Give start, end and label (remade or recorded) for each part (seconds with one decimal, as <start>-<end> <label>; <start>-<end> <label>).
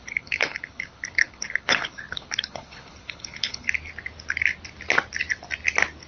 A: 0.0-3.7 remade; 3.7-6.1 recorded